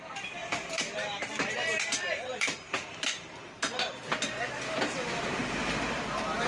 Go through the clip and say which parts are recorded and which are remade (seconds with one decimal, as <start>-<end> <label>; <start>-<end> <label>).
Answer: 0.0-0.4 recorded; 0.4-4.0 remade; 4.0-6.5 recorded